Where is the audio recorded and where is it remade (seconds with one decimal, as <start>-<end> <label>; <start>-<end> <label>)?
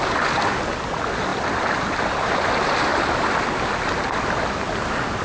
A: 0.0-1.3 recorded; 1.3-2.0 remade; 2.0-5.2 recorded